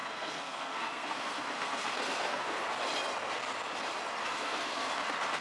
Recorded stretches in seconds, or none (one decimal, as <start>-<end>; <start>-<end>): 2.6-4.2; 4.9-5.4